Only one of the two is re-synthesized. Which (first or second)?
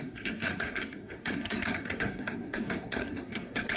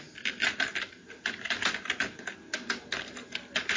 first